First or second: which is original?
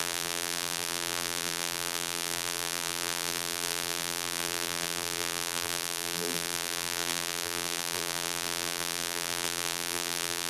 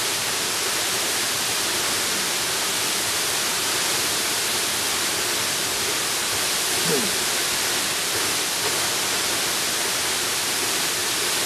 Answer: second